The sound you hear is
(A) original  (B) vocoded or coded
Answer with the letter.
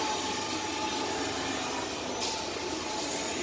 A